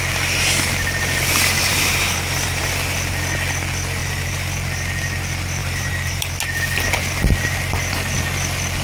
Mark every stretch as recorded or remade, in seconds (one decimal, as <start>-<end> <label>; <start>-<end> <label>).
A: 0.0-1.7 recorded; 1.7-2.6 remade; 2.6-4.0 recorded; 4.0-4.5 remade; 4.5-5.6 recorded; 5.6-6.3 remade; 6.3-8.8 recorded